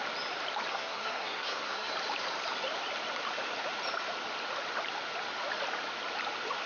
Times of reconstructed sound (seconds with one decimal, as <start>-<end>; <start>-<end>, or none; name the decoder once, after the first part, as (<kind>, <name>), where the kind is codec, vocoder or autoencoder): 0.7-1.9 (codec, SNAC)